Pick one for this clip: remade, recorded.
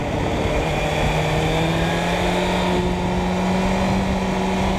recorded